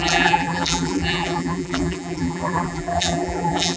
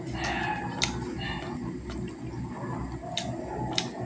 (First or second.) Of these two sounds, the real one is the second